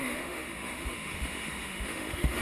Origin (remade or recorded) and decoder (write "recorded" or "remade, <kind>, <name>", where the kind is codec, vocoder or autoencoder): remade, autoencoder, DAC-VAE